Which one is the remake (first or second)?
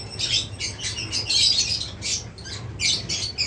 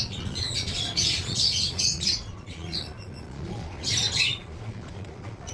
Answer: second